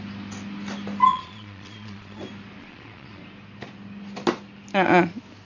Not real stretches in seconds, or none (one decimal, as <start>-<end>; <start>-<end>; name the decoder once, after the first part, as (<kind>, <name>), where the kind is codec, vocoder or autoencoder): 1.1-2.2 (vocoder, Vocos); 2.6-3.2